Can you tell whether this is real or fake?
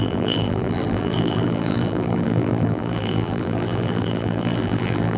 fake